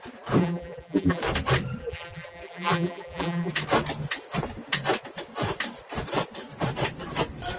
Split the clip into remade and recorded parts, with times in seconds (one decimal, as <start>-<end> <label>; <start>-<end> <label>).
0.0-0.4 recorded; 0.4-1.2 remade; 1.2-1.8 recorded; 1.8-3.5 remade; 3.5-7.6 recorded